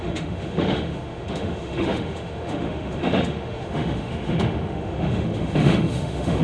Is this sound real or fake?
fake